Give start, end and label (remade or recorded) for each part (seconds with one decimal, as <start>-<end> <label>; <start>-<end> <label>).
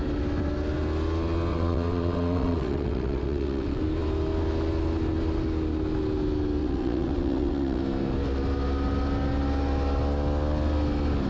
0.0-1.5 recorded; 1.5-3.8 remade; 3.8-6.6 recorded; 6.6-7.8 remade; 7.8-11.3 recorded